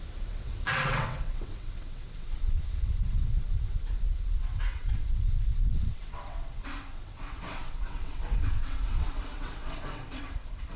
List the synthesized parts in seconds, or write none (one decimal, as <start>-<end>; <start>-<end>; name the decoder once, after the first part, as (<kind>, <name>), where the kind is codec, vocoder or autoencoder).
0.0-10.8 (vocoder, WaveNeXt)